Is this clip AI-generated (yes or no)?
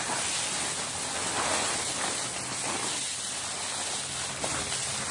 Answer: no